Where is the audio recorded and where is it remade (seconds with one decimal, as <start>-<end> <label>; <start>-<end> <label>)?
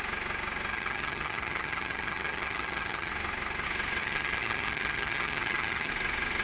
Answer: 0.0-0.7 recorded; 0.7-3.1 remade; 3.1-4.0 recorded; 4.0-5.9 remade; 5.9-6.4 recorded